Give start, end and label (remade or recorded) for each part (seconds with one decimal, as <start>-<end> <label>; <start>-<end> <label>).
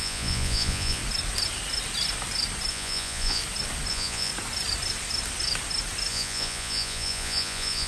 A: 0.0-1.0 remade; 1.0-2.7 recorded; 2.7-3.4 remade; 3.4-3.9 recorded; 3.9-4.3 remade; 4.3-6.1 recorded; 6.1-7.9 remade